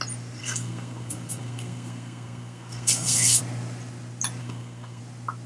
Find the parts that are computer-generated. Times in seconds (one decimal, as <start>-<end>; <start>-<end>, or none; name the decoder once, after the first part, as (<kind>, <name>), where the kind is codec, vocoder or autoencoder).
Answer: 0.4-3.4 (codec, SNAC); 4.4-5.0